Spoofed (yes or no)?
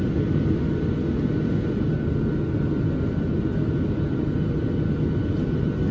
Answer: no